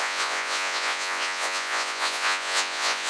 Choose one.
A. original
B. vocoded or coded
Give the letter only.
B